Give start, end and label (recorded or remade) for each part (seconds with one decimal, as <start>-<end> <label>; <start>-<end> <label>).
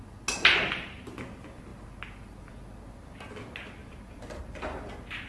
0.0-5.3 recorded